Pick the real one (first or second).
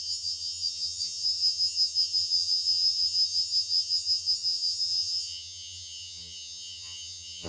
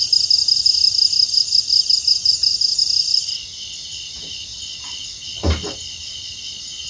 second